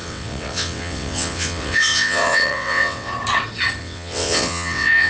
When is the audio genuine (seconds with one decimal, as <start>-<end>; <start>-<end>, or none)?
3.1-3.8